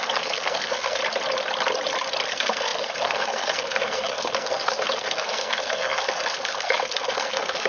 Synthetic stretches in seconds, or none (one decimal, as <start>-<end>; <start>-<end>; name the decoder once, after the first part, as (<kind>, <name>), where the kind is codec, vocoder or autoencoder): 0.0-1.0 (codec, SNAC); 2.3-7.7